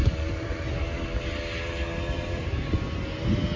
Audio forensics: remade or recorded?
recorded